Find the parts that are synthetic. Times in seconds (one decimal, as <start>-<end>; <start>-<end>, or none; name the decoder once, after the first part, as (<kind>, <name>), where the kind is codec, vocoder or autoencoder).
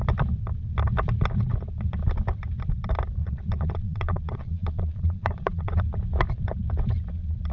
3.2-5.8 (vocoder, Vocos)